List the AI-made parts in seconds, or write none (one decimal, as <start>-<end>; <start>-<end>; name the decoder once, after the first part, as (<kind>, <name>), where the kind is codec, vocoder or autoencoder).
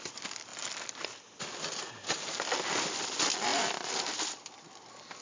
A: 3.5-4.4 (vocoder, BigVGAN v2)